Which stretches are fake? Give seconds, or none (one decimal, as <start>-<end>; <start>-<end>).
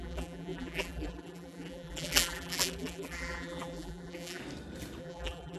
0.0-4.4; 5.0-5.6